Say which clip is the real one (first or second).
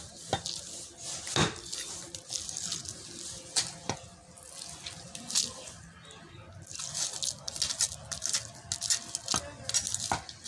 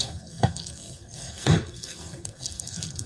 first